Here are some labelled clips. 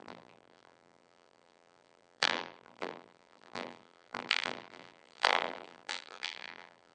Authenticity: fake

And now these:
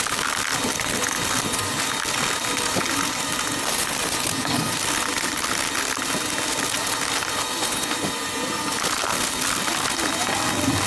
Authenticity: real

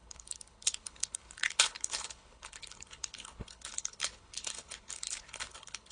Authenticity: fake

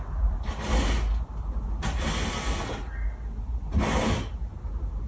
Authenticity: real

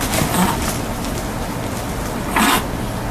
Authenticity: real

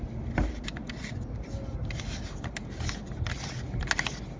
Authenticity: real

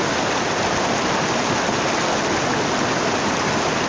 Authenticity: real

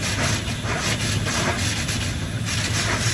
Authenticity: real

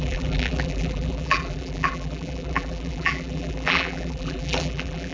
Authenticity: fake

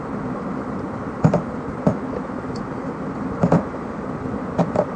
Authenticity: real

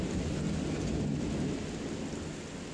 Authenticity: real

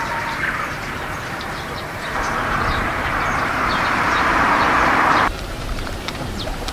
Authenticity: fake